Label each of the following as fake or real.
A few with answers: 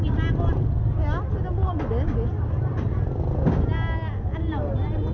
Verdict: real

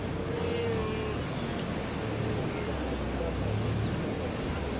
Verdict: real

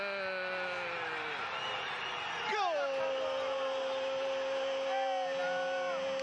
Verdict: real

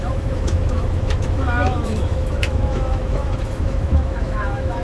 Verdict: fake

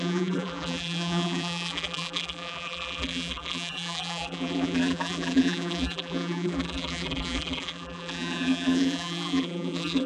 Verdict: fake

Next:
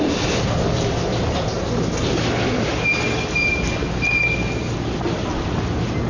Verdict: real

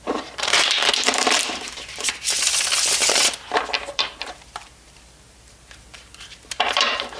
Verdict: fake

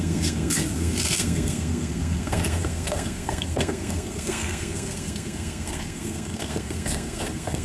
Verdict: fake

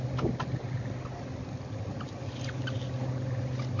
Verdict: real